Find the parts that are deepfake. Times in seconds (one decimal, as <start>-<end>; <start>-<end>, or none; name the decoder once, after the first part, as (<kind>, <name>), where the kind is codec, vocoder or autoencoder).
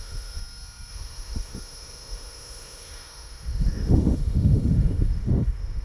0.0-0.4 (autoencoder, DAC-VAE); 0.9-5.8